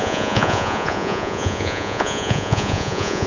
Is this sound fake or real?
fake